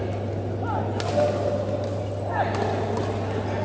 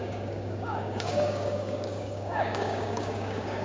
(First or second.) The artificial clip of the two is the second